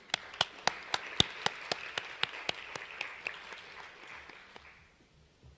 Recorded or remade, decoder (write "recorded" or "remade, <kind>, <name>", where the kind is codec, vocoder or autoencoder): recorded